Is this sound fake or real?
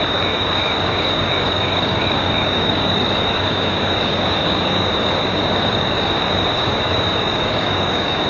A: fake